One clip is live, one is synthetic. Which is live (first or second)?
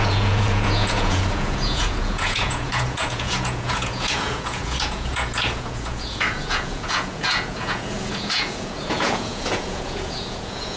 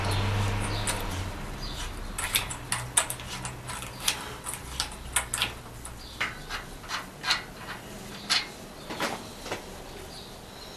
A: second